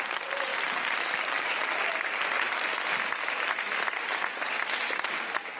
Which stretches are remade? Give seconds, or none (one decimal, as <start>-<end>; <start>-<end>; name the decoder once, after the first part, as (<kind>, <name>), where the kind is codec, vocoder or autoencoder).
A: 0.5-2.8 (vocoder, BigVGAN v2)